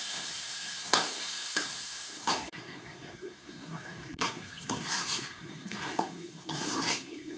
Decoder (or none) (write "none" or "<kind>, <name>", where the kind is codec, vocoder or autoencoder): codec, SNAC